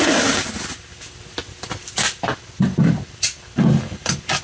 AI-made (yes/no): no